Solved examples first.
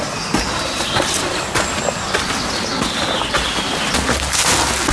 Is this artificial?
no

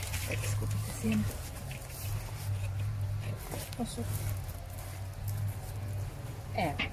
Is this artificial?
no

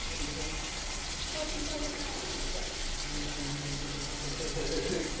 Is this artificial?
no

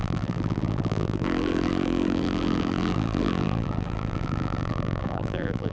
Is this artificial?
yes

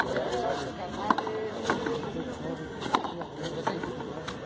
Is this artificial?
no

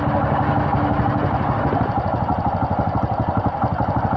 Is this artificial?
no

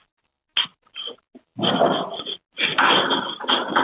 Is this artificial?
no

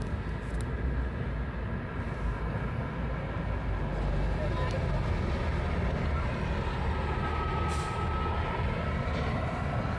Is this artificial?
no